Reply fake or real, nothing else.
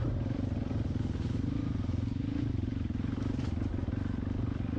real